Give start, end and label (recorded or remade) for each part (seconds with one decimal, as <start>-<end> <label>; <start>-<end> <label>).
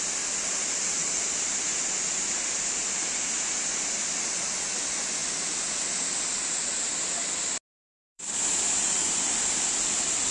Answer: 0.0-7.9 recorded; 7.9-9.6 remade; 9.6-10.3 recorded